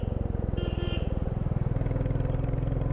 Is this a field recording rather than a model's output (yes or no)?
yes